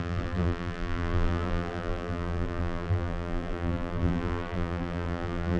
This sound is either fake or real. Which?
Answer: fake